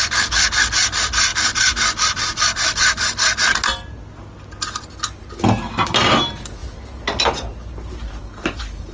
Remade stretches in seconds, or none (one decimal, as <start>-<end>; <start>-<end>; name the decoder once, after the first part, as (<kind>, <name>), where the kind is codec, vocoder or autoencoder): none